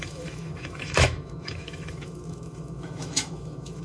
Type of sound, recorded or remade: remade